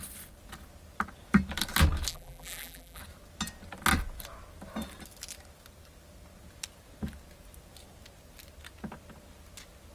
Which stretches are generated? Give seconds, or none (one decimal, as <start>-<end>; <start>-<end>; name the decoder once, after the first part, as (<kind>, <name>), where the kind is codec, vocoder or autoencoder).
2.1-3.0 (vocoder, BigVGAN v2)

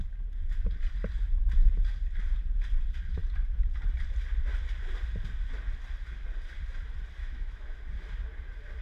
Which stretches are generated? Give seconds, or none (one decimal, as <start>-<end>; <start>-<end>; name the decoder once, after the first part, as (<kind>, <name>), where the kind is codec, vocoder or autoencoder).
7.2-7.8 (autoencoder, DAC-VAE)

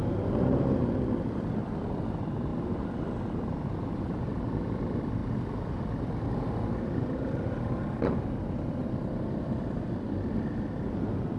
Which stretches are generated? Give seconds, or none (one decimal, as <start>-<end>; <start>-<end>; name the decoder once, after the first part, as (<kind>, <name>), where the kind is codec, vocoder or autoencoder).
0.0-2.5 (vocoder, BigVGAN v2); 3.9-5.2; 8.9-11.4

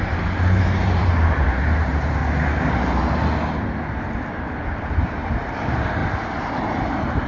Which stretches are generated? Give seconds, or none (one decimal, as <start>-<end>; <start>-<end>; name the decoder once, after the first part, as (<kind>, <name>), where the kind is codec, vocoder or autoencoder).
0.0-2.2 (vocoder, BigVGAN v2); 4.0-6.0; 6.5-7.3

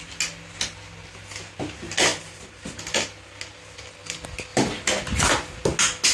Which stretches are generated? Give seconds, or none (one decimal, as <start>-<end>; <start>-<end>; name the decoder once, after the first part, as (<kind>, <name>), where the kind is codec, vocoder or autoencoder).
2.1-2.8 (vocoder, BigVGAN v2)